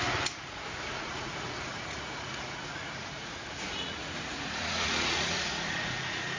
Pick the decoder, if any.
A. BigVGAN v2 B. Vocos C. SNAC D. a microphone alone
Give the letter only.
B